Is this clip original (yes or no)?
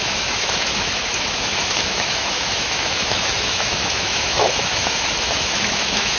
no